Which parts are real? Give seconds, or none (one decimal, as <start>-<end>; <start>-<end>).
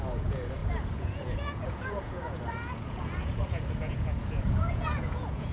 none